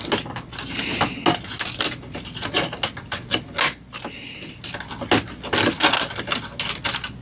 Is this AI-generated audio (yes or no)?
no